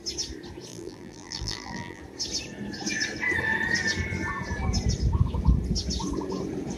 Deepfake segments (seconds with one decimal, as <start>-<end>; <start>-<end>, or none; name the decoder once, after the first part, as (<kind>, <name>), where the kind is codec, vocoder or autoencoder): 0.7-2.0 (vocoder, BigVGAN v2)